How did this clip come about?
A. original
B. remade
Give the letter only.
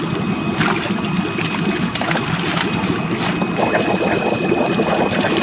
A